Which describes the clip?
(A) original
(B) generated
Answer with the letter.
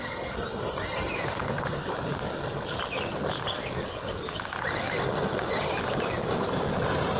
A